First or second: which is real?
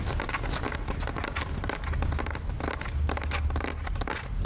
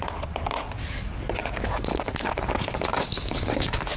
first